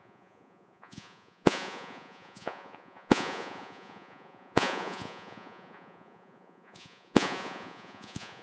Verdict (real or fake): fake